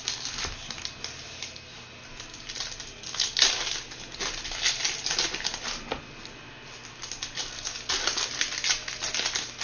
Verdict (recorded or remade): recorded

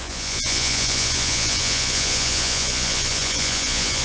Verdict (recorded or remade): remade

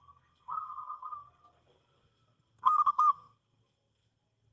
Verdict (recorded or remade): remade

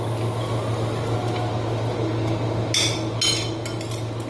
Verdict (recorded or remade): recorded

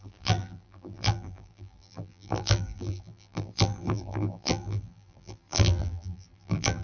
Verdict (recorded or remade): remade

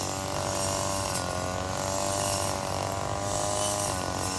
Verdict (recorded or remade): recorded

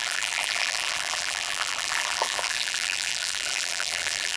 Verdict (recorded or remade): remade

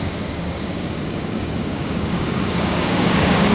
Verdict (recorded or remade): remade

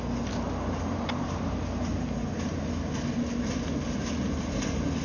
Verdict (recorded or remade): recorded